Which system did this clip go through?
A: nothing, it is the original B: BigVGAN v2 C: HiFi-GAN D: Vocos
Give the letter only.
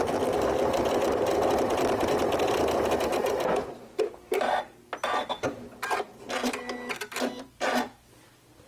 A